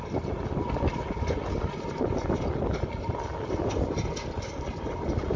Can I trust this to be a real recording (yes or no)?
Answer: yes